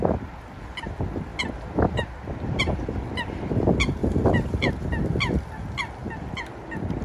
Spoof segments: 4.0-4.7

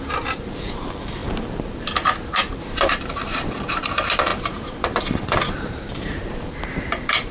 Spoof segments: 0.0-7.3

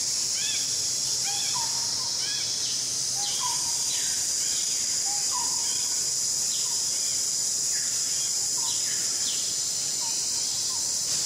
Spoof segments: 9.0-9.5

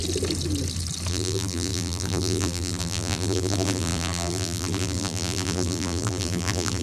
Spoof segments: 1.1-6.8

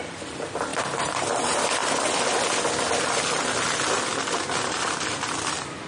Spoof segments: 0.0-1.8; 5.3-5.9

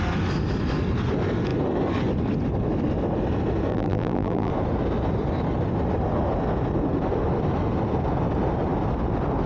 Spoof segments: 3.7-4.5

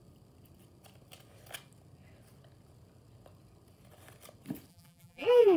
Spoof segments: 4.7-5.6

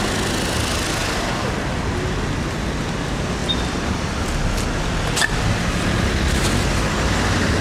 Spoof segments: 3.4-4.9